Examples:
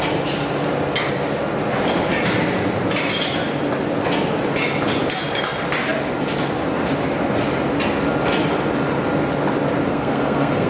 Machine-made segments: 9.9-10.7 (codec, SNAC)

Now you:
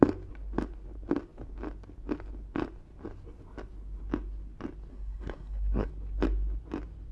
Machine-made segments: 4.9-5.9 (codec, SNAC)

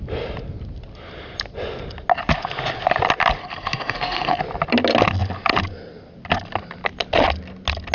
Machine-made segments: 3.4-4.4 (codec, SNAC)

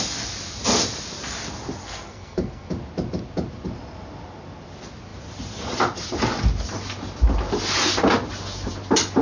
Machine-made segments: 1.8-2.7 (codec, SNAC)

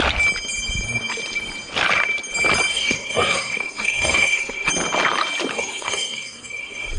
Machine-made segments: 2.7-4.7 (codec, SNAC); 5.5-7.0

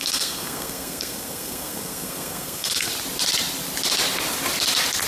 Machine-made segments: 0.0-2.9 (codec, SNAC)

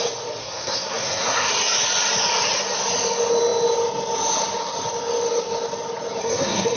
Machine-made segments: 0.4-1.5 (codec, SNAC); 6.2-6.8